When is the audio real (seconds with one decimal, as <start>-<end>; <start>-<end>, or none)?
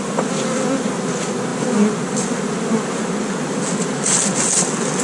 0.0-5.0